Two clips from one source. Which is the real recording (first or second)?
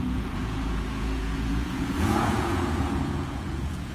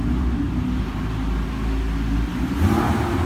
second